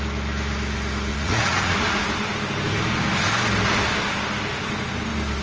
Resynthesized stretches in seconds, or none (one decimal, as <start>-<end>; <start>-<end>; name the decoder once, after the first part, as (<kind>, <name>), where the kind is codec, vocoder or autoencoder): 1.1-2.0 (vocoder, Vocos)